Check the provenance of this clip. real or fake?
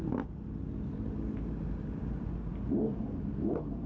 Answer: real